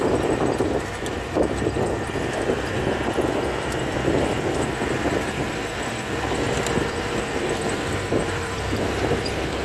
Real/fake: real